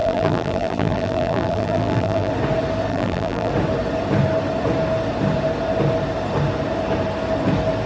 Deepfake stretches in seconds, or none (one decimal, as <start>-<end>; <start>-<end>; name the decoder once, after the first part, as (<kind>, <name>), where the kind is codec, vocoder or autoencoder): 0.0-2.3 (vocoder, BigVGAN v2); 2.9-3.5